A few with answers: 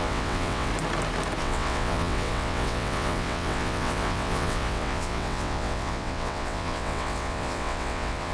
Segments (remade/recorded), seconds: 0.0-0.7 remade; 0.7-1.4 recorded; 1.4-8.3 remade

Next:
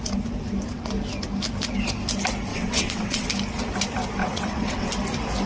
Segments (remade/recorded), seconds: 0.0-2.5 recorded; 2.5-3.3 remade; 3.3-4.2 recorded; 4.2-4.9 remade; 4.9-5.5 recorded

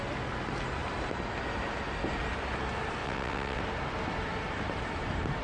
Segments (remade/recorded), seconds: 0.0-3.0 recorded; 3.0-3.6 remade; 3.6-5.4 recorded

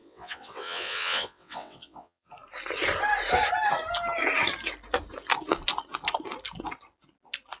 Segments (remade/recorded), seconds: 0.0-2.3 remade; 2.3-7.6 recorded